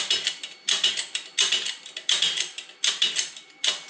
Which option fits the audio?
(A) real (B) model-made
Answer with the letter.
B